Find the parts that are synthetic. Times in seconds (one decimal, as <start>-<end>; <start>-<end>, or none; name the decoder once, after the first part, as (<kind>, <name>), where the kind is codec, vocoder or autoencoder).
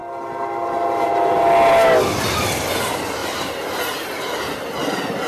3.2-3.8 (vocoder, BigVGAN v2)